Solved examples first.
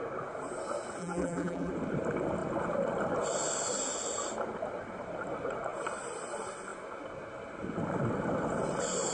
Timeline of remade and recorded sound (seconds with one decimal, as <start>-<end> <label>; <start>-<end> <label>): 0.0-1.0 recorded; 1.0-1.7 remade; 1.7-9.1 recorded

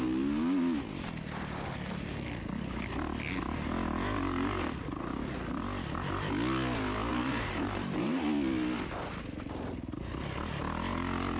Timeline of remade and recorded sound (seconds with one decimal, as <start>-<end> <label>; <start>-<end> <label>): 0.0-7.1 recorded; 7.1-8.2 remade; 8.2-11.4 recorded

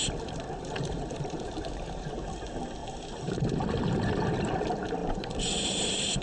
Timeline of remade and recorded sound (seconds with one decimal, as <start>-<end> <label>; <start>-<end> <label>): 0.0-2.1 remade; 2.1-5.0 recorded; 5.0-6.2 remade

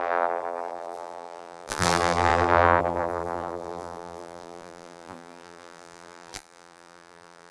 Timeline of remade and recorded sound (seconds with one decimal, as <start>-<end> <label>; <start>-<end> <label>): 0.0-7.5 remade

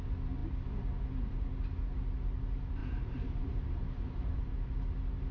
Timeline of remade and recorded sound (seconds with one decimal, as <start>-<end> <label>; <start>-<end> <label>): 0.0-2.8 recorded; 2.8-4.4 remade; 4.4-5.3 recorded